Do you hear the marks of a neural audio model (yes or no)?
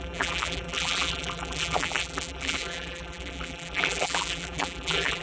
yes